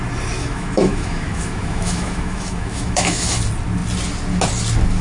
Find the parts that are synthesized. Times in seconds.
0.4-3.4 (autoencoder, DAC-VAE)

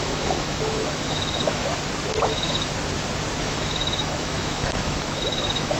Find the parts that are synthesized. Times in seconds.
0.0-1.7 (autoencoder, DAC-VAE); 2.3-2.7; 3.4-5.8

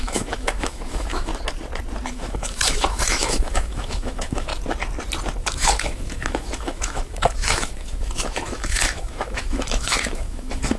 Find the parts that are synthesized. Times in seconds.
0.0-1.3 (autoencoder, DAC-VAE); 2.1-4.5; 5.4-10.8

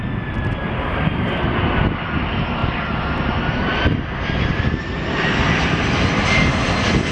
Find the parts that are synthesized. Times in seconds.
none

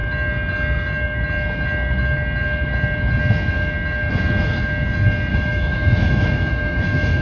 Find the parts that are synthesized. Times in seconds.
5.3-7.2 (autoencoder, DAC-VAE)

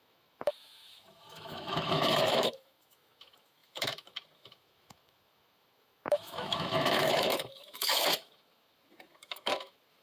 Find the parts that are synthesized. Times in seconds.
0.0-10.0 (autoencoder, DAC-VAE)

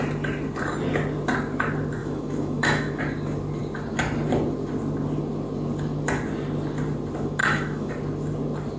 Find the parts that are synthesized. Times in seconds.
2.0-3.0 (autoencoder, DAC-VAE); 7.4-7.9